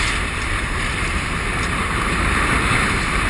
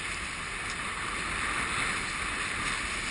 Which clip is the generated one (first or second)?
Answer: first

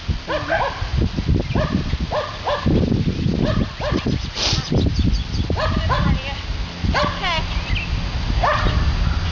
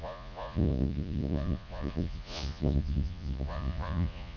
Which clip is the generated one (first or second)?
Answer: second